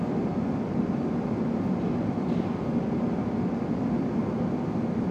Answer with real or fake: real